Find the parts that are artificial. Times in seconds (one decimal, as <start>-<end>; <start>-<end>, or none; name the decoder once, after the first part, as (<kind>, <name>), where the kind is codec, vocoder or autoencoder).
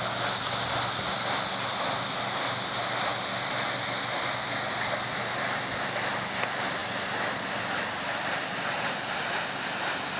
none